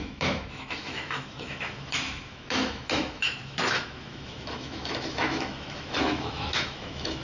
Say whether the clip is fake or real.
fake